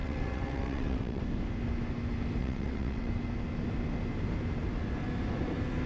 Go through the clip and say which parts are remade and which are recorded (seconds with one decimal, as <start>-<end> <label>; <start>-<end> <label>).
0.0-1.2 remade; 1.2-2.4 recorded; 2.4-3.1 remade; 3.1-5.9 recorded